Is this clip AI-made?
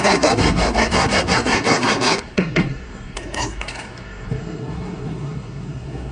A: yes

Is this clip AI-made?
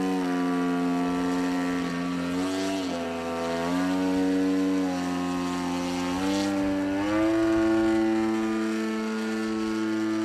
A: no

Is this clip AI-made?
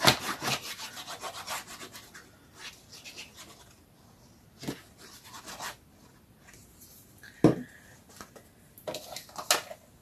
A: no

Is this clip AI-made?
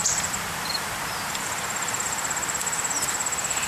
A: yes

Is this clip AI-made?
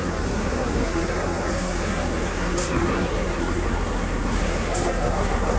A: yes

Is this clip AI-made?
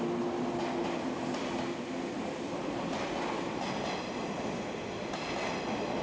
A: no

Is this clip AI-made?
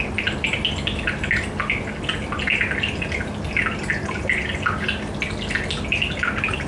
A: no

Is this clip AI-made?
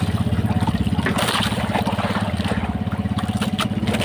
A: no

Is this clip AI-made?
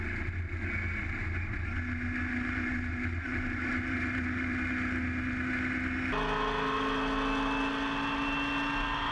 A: no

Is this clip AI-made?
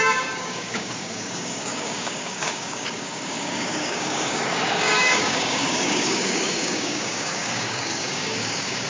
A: yes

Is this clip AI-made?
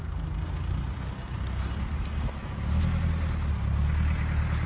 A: no